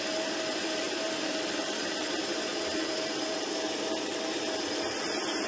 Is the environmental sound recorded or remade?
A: remade